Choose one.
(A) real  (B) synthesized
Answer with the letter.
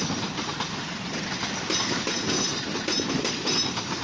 A